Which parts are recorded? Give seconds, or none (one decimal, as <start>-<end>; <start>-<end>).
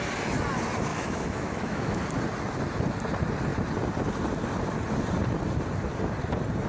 0.0-0.9; 2.0-6.7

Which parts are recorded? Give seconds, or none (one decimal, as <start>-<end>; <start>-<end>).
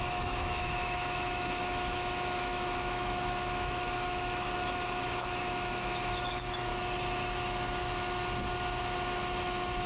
6.7-9.9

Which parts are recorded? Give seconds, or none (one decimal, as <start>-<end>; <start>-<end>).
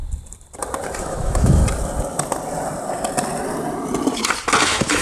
0.0-1.0; 1.6-4.6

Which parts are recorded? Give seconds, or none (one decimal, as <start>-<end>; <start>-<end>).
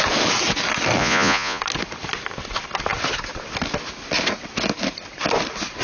0.0-1.0; 1.6-5.8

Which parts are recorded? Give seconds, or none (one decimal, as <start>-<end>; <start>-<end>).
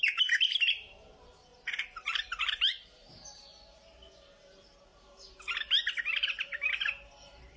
0.0-1.5; 3.1-4.9